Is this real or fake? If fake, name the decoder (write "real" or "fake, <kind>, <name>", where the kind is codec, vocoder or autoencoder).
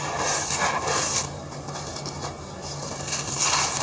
real